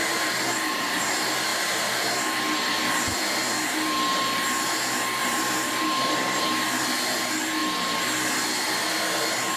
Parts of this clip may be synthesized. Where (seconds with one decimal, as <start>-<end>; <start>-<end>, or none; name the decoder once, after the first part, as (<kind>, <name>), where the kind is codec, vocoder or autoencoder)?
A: 0.0-1.0 (vocoder, BigVGAN v2); 1.5-2.1; 5.2-6.4